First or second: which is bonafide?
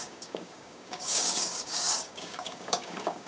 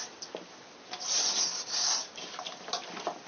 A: second